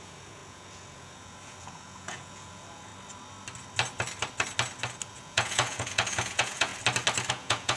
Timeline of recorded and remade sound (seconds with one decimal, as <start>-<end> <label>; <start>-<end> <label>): 0.0-2.9 remade; 2.9-5.1 recorded; 5.1-6.7 remade; 6.7-7.3 recorded; 7.3-7.8 remade